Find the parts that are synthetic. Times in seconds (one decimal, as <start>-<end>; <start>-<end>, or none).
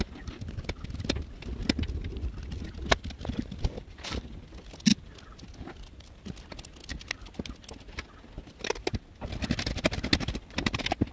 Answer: none